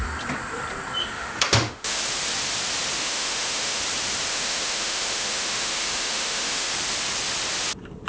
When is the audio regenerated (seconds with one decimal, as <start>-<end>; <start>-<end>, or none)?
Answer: 1.0-2.0; 3.0-3.8; 4.3-6.7